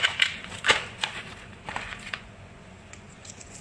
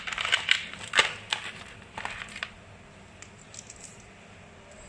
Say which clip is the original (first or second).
second